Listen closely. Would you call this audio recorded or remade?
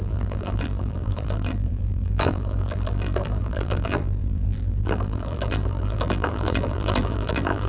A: remade